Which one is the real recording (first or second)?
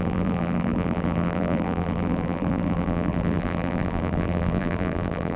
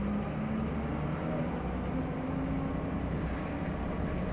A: second